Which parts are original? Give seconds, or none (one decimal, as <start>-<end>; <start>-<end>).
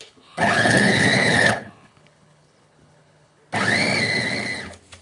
3.4-5.0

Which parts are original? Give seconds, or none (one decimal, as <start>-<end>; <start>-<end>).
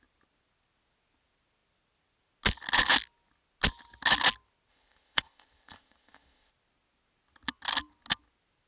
0.0-4.7; 6.5-8.7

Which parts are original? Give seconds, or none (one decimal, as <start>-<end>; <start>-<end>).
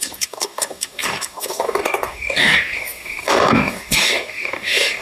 none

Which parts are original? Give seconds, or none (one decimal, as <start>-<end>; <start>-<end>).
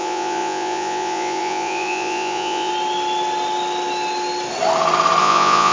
2.7-5.2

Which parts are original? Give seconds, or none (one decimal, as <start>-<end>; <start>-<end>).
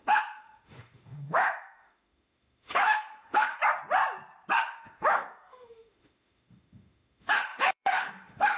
3.6-4.6